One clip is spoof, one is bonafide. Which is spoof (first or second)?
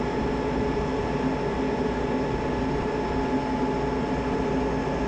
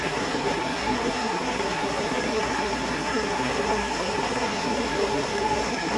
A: second